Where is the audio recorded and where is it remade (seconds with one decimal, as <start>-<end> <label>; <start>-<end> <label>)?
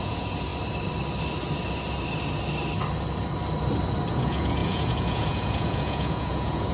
0.0-0.5 remade; 0.5-4.1 recorded; 4.1-6.7 remade